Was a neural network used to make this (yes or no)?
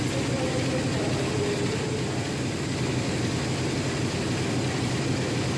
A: no